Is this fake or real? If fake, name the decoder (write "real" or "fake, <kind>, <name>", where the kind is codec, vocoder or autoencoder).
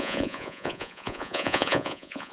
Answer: fake, vocoder, Vocos